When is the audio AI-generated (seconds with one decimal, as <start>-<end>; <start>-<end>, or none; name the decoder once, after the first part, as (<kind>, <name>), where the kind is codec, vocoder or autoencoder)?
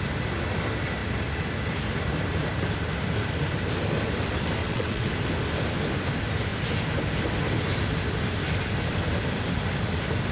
4.6-5.1 (vocoder, WaveNeXt)